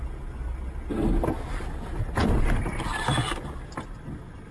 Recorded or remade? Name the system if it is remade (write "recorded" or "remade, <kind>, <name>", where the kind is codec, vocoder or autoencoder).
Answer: recorded